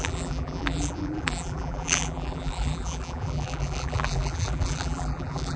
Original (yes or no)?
no